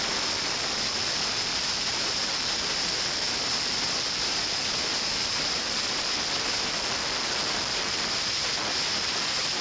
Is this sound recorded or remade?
remade